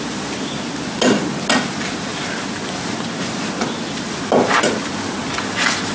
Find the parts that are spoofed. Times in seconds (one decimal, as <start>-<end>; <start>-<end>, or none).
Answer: none